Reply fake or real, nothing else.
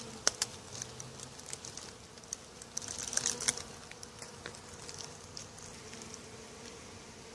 real